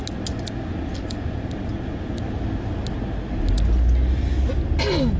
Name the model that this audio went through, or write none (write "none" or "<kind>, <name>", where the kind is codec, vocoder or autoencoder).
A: none